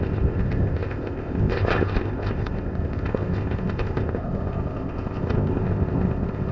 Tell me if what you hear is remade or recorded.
remade